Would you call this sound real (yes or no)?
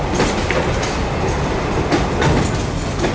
yes